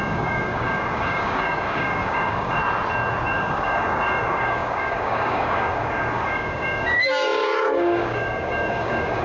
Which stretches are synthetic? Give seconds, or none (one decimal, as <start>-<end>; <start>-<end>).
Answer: 0.0-2.6; 3.2-9.2